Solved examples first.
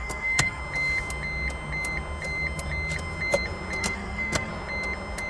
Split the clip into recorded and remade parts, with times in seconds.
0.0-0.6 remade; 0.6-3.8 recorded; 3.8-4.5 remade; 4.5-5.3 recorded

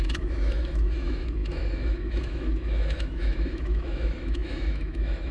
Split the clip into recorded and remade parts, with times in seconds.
0.0-5.3 remade

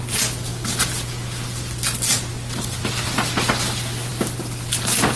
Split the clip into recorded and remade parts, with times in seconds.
0.0-5.2 recorded